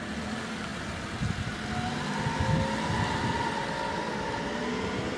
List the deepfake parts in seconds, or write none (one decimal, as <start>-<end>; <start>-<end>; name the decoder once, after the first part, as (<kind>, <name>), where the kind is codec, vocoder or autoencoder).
none